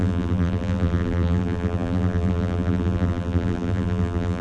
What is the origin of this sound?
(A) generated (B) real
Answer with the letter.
A